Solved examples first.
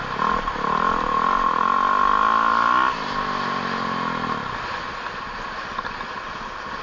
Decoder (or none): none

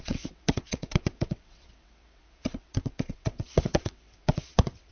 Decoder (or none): vocoder, WaveNeXt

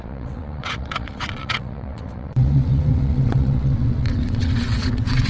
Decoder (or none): vocoder, WaveNeXt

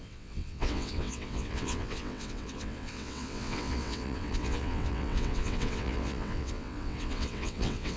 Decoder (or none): vocoder, WaveNeXt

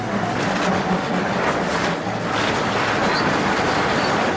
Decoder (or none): none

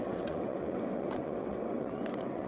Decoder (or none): vocoder, WaveNeXt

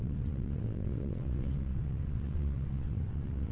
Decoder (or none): vocoder, WaveNeXt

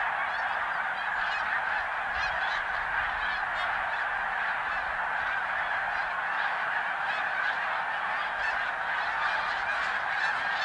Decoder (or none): none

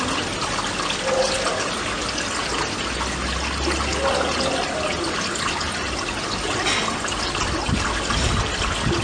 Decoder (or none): none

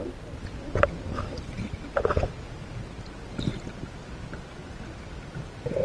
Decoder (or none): none